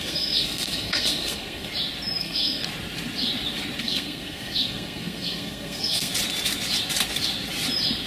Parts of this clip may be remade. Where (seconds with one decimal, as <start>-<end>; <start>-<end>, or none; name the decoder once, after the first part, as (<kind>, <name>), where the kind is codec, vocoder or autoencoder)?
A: 0.0-1.7 (codec, SNAC); 2.2-2.6; 3.8-6.1